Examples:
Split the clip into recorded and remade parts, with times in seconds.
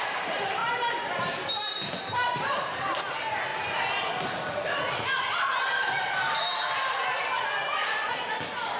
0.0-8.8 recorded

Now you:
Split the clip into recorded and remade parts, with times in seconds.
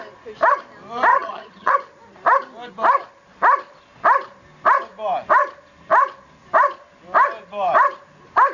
0.0-1.1 recorded; 1.1-1.7 remade; 1.7-8.5 recorded